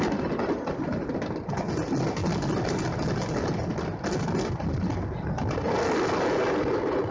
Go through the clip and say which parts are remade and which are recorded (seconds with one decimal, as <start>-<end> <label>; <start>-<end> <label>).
0.0-7.1 recorded